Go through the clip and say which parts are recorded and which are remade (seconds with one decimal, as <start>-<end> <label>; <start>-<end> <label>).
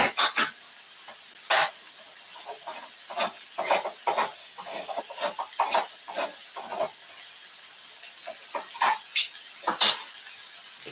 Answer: 0.0-4.4 recorded; 4.4-5.0 remade; 5.0-10.9 recorded